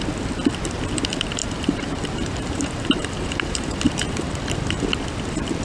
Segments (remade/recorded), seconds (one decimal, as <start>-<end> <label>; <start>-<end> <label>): 0.0-1.4 recorded; 1.4-4.8 remade; 4.8-5.6 recorded